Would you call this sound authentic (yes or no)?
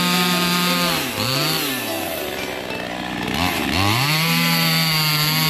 yes